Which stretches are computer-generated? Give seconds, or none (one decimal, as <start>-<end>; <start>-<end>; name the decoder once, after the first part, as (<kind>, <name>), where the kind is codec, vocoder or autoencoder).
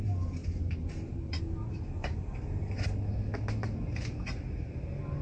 0.4-1.4 (vocoder, BigVGAN v2)